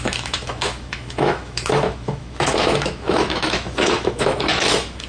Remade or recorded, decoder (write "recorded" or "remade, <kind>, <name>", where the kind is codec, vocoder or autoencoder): remade, autoencoder, DAC-VAE